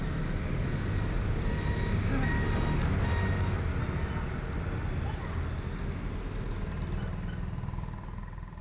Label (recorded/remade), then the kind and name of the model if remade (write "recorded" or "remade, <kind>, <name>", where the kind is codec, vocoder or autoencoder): recorded